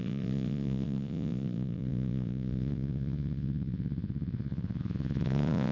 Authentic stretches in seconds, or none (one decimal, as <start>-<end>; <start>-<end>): none